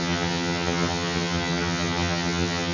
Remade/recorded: remade